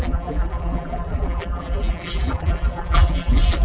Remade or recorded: remade